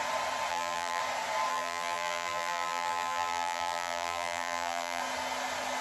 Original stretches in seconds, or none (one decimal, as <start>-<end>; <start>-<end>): 0.0-0.5; 1.0-1.5; 5.0-5.8